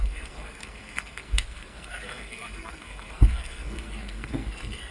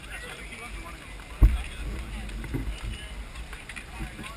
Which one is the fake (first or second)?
first